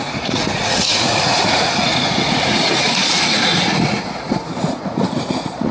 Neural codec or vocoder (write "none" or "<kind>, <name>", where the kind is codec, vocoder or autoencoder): vocoder, Vocos